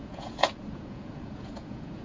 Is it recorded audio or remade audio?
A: remade